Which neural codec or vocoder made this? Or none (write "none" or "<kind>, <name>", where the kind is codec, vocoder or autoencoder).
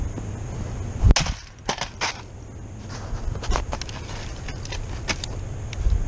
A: none